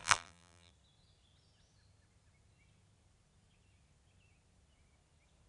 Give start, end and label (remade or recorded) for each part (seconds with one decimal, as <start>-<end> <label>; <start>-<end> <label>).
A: 0.0-0.7 remade; 0.7-5.5 recorded